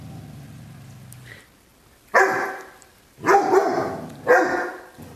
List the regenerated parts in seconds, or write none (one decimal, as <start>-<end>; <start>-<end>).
1.7-4.8